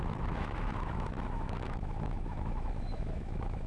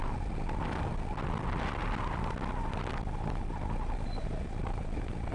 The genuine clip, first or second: second